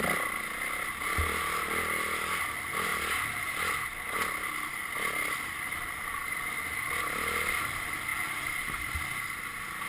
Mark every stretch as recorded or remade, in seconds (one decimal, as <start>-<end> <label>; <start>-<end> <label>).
0.0-9.9 recorded